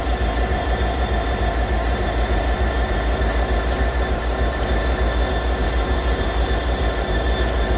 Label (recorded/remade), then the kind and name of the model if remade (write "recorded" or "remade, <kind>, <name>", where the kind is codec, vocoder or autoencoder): remade, vocoder, BigVGAN v2